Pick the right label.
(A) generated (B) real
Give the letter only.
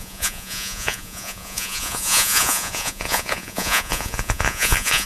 A